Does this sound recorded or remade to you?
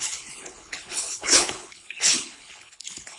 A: remade